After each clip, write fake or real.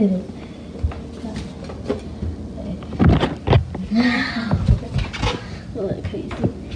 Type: real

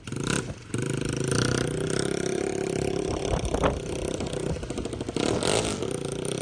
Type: real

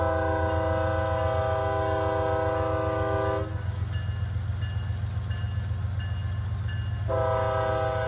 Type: real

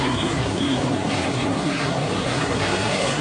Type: fake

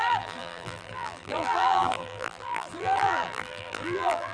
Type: fake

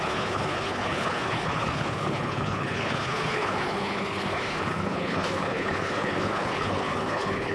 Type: fake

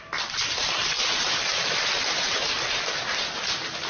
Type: real